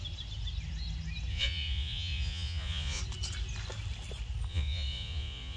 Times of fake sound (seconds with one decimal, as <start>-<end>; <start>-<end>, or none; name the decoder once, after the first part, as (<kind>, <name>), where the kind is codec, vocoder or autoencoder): 1.3-3.0 (vocoder, Vocos); 4.5-5.6